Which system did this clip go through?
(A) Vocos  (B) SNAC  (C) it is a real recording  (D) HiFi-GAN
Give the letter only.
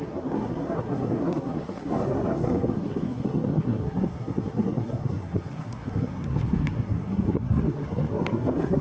B